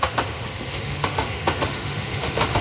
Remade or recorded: remade